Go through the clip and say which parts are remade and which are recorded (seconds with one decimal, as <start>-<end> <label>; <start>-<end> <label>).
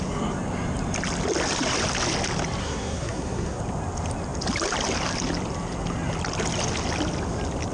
0.0-2.6 recorded; 2.6-3.6 remade; 3.6-7.7 recorded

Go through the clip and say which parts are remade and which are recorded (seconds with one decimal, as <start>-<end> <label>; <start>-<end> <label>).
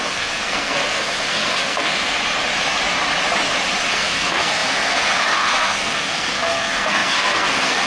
0.0-2.2 remade; 2.2-3.9 recorded; 3.9-7.9 remade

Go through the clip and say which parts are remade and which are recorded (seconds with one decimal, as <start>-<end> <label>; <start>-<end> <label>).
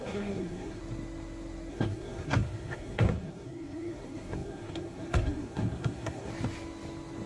0.0-0.8 remade; 0.8-1.7 recorded; 1.7-6.3 remade; 6.3-7.3 recorded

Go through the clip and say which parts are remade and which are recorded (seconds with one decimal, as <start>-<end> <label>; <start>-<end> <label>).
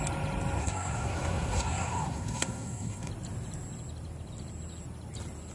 0.0-0.6 recorded; 0.6-3.1 remade; 3.1-5.5 recorded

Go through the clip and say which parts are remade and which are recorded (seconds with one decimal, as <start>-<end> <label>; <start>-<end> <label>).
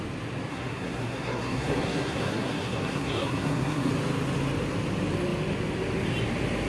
0.0-0.5 recorded; 0.5-3.9 remade; 3.9-6.7 recorded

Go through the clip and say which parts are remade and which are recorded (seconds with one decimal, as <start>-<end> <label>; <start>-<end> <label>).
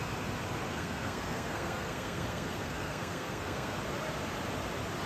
0.0-0.7 recorded; 0.7-3.8 remade; 3.8-5.1 recorded